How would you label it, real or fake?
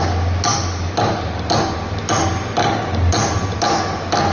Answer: real